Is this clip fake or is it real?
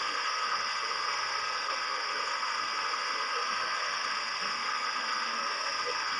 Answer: fake